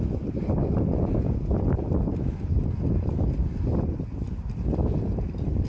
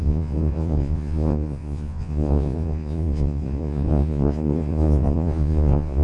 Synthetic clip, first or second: second